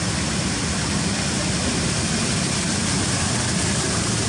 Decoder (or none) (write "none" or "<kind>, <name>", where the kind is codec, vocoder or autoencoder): none